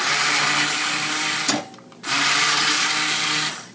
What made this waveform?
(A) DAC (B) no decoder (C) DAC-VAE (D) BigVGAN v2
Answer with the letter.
B